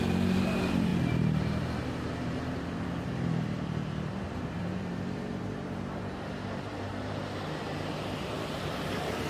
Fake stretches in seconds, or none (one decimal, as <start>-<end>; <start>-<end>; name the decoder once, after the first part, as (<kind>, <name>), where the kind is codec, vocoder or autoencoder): 0.0-9.3 (vocoder, BigVGAN v2)